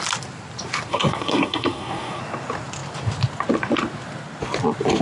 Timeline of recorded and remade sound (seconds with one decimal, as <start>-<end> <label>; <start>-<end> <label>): 0.0-0.9 recorded; 0.9-2.2 remade; 2.2-5.0 recorded